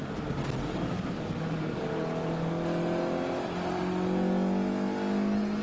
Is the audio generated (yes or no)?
no